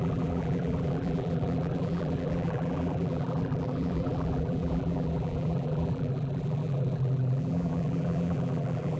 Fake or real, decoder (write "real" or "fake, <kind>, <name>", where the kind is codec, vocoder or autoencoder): fake, vocoder, BigVGAN v2